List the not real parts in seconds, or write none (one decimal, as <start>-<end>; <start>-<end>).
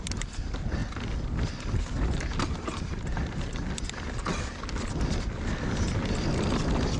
none